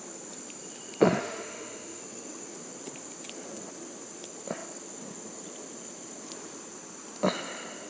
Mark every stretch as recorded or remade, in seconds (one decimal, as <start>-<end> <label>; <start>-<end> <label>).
0.0-1.2 recorded; 1.2-2.0 remade; 2.0-7.9 recorded